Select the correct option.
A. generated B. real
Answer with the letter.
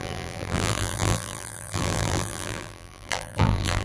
A